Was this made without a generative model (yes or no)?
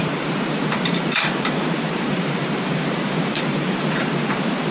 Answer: no